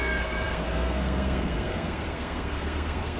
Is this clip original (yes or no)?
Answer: no